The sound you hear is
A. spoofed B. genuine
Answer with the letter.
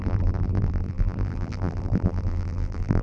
A